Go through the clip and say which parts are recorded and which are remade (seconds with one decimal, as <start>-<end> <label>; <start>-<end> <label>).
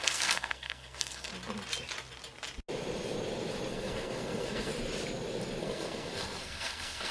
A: 0.0-1.3 remade; 1.3-3.7 recorded; 3.7-4.7 remade; 4.7-5.6 recorded; 5.6-7.1 remade